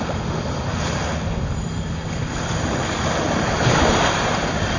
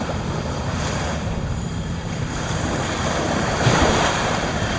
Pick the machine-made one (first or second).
second